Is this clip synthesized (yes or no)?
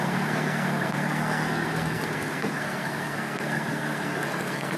yes